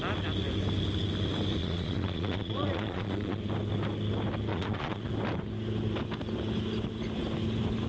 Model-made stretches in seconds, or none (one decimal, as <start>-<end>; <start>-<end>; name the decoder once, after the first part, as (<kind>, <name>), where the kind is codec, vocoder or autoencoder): 1.6-3.4 (vocoder, Vocos); 4.5-5.1